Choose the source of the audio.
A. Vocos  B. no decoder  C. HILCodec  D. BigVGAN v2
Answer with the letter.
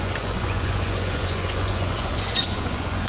A